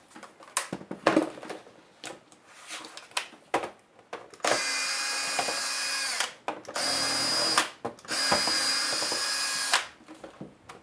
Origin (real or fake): real